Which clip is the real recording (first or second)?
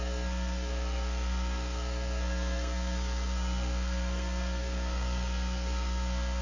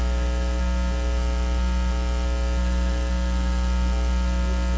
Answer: second